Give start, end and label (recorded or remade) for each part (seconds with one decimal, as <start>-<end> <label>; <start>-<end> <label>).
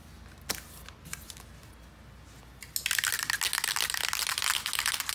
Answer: 0.0-5.1 recorded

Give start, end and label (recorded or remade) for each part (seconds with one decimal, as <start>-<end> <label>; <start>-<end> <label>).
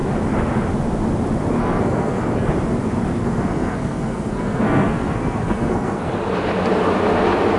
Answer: 0.0-1.6 recorded; 1.6-2.5 remade; 2.5-3.2 recorded; 3.2-6.1 remade; 6.1-7.6 recorded